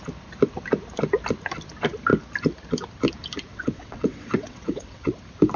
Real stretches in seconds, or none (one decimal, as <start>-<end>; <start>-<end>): 0.0-3.5; 5.1-5.6